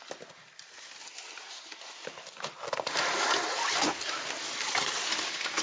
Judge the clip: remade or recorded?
remade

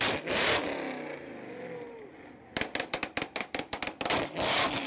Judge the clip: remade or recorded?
recorded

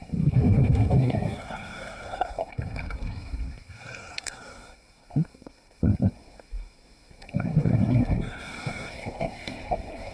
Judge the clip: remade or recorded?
remade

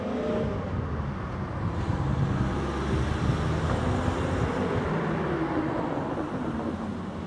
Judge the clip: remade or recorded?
recorded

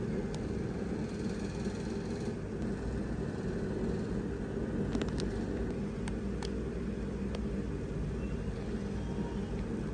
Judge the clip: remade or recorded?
recorded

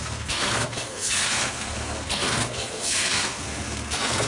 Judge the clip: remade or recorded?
remade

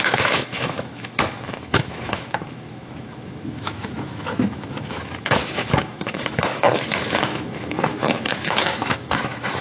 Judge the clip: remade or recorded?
remade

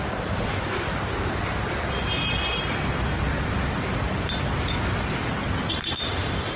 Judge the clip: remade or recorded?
recorded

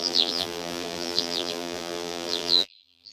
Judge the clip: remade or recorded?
remade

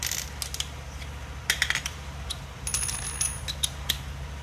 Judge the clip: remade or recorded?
recorded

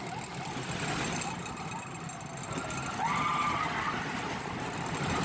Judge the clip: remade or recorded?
recorded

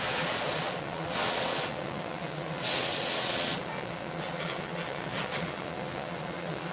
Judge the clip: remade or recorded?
remade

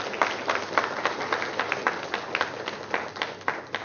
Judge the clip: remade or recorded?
recorded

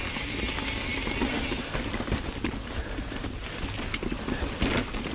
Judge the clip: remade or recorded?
recorded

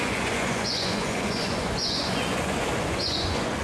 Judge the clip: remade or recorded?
remade